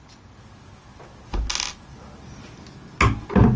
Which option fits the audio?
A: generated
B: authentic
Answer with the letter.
B